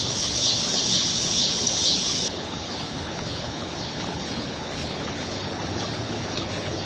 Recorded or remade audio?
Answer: remade